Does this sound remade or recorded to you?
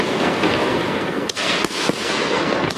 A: remade